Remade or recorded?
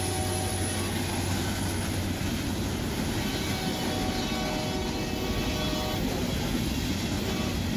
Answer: recorded